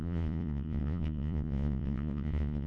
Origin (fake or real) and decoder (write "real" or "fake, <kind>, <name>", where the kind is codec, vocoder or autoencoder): fake, vocoder, Vocos